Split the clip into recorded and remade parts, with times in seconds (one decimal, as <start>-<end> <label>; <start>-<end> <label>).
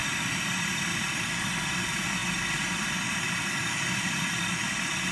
0.0-5.1 recorded